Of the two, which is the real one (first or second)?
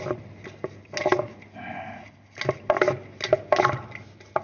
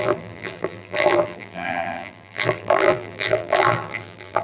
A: first